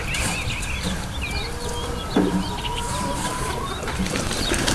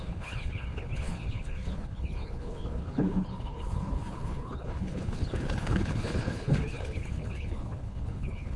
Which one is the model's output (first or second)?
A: second